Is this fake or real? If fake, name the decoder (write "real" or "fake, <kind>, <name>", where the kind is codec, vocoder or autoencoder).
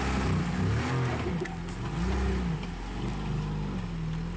real